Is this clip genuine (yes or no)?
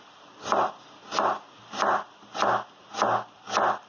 yes